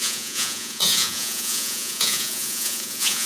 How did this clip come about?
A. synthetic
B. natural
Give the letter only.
A